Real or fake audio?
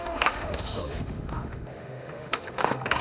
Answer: fake